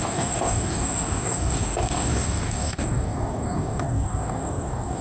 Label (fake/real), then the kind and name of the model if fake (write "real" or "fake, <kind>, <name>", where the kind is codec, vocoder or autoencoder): fake, codec, DAC